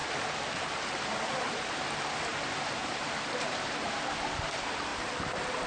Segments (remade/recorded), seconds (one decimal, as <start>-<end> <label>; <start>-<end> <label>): 0.0-2.3 recorded; 2.3-3.9 remade; 3.9-4.9 recorded; 4.9-5.7 remade